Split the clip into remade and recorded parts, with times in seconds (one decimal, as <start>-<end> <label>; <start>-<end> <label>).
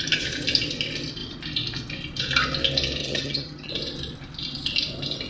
0.0-3.0 recorded; 3.0-3.7 remade; 3.7-5.3 recorded